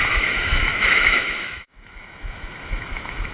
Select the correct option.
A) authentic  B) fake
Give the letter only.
B